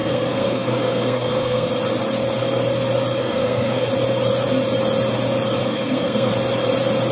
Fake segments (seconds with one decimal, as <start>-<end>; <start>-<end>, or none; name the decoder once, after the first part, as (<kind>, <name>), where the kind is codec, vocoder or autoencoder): 0.0-1.7 (codec, SNAC); 3.2-3.9; 5.6-6.3